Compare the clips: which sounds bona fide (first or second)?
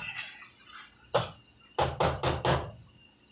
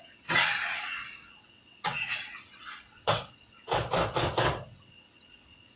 first